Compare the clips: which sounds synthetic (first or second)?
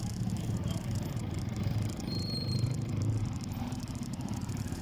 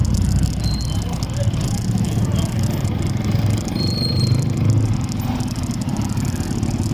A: first